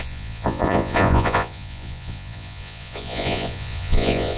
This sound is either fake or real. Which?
fake